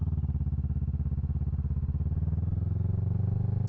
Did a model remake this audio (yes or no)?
no